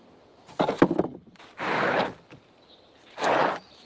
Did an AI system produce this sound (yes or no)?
no